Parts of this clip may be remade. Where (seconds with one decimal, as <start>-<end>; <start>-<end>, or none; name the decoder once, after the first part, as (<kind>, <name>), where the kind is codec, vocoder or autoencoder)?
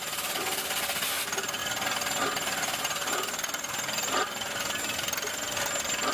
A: none